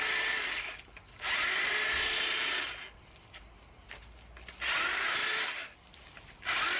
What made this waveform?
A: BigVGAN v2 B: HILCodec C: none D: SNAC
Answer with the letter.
C